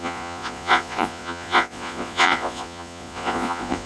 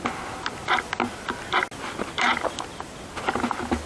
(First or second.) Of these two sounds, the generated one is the first